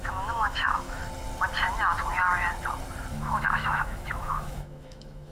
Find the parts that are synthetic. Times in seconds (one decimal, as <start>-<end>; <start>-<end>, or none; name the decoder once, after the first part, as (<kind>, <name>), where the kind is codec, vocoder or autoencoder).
0.0-1.0 (autoencoder, DAC-VAE); 3.1-5.3